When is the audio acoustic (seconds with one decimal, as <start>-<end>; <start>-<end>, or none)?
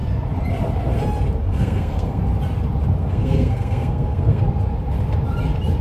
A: 0.0-1.4; 2.2-3.0; 4.4-5.8